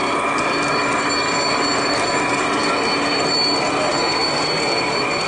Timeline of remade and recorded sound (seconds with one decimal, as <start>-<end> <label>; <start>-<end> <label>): 0.0-5.3 recorded